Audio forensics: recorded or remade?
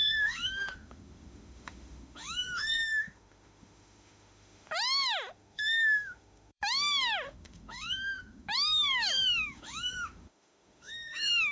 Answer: remade